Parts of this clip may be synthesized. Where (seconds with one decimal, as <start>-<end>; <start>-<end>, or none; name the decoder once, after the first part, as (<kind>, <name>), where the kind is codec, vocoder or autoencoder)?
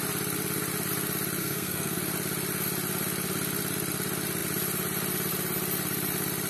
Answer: 1.4-2.0 (codec, SNAC)